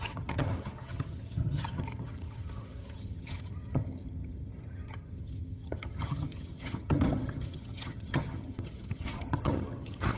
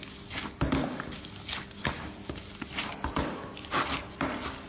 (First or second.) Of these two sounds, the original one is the second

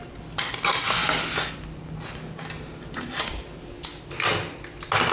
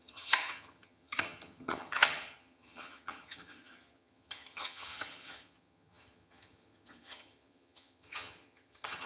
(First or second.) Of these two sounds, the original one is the first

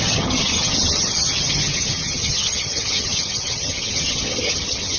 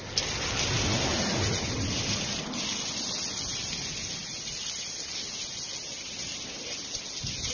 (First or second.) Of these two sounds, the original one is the second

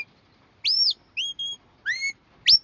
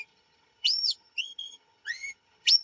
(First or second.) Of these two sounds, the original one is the first